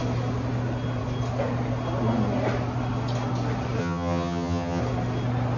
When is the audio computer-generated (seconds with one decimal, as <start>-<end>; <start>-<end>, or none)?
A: 3.8-4.8